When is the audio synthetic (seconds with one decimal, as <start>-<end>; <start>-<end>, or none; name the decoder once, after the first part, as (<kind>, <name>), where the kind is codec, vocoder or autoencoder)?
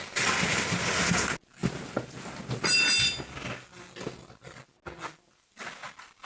none